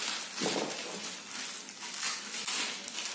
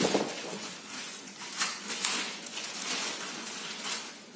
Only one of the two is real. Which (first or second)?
first